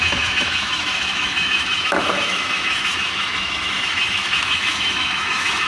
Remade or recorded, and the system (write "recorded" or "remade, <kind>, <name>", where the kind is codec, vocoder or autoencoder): remade, autoencoder, DAC-VAE